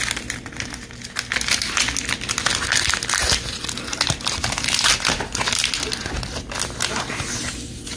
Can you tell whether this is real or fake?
real